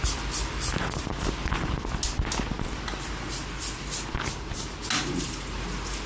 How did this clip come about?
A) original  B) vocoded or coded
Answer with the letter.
A